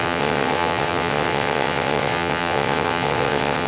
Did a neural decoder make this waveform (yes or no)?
yes